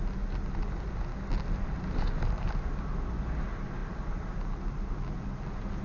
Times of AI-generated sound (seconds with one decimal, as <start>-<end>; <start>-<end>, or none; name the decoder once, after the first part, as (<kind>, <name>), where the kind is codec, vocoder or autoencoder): 1.1-2.8 (vocoder, BigVGAN v2)